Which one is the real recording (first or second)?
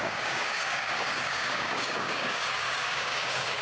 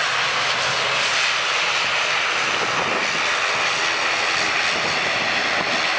second